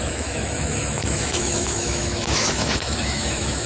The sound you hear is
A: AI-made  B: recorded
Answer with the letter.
A